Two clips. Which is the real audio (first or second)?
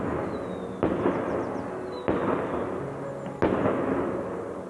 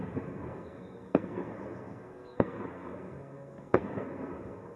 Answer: first